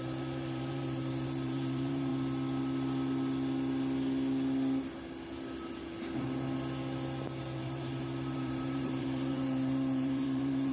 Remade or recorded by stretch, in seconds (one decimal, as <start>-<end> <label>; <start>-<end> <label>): 0.0-2.1 remade; 2.1-7.4 recorded; 7.4-10.7 remade